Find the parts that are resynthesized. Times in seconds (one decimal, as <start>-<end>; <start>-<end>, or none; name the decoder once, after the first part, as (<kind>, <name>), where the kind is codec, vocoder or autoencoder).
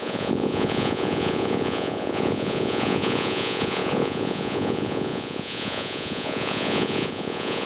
0.0-7.7 (vocoder, Vocos)